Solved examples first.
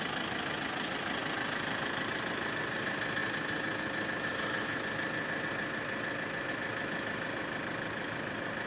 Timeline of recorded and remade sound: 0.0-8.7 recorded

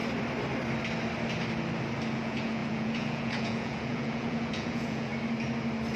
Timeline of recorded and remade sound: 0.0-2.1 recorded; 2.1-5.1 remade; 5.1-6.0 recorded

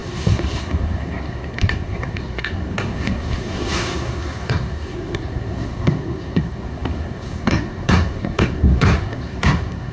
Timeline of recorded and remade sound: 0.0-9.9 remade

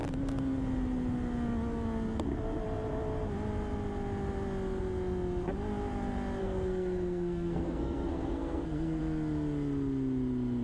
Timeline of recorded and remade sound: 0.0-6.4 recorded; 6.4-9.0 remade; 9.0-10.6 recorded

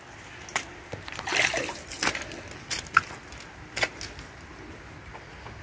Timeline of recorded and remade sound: 0.0-5.6 recorded